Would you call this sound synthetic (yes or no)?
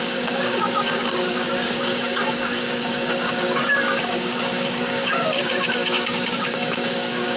yes